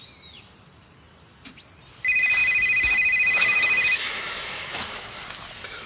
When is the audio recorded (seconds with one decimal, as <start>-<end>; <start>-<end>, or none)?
0.0-2.4; 5.2-5.9